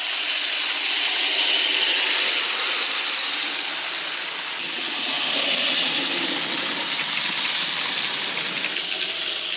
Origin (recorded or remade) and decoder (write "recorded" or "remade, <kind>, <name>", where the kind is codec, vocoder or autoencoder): recorded